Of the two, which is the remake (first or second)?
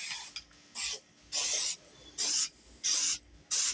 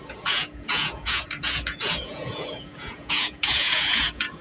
second